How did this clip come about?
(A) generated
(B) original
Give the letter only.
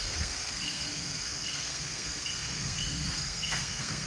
A